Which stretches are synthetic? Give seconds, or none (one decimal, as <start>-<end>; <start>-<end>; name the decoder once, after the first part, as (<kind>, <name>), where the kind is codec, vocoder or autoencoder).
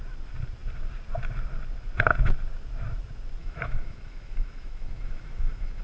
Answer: 3.4-5.8 (autoencoder, DAC-VAE)